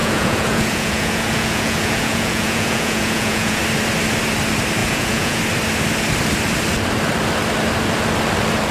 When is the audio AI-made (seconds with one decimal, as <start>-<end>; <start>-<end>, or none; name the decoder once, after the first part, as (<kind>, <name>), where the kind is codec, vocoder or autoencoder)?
0.0-3.6 (vocoder, Vocos); 4.8-5.4